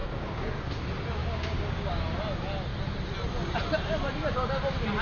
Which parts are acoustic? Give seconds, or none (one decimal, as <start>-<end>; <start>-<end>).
0.7-1.2; 2.0-5.0